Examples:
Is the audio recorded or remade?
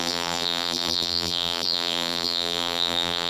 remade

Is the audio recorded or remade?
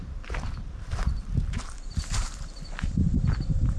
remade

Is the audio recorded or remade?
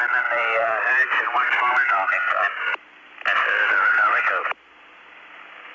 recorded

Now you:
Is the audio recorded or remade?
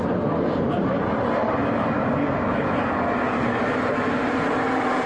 remade